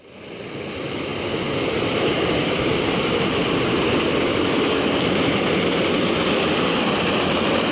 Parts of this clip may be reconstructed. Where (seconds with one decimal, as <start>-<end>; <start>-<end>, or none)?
none